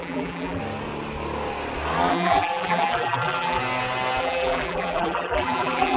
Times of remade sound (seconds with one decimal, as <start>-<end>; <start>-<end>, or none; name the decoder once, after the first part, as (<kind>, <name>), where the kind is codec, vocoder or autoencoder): 0.0-0.6 (vocoder, BigVGAN v2); 2.1-3.6; 4.2-6.0